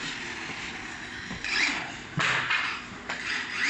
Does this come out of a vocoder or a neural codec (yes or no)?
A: no